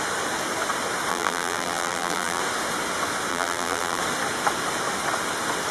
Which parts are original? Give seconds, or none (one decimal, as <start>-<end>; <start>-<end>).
0.0-1.1; 2.4-3.3; 4.0-5.7